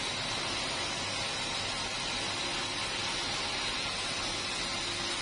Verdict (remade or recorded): recorded